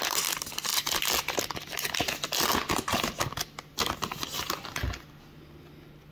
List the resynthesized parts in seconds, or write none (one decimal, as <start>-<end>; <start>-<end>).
none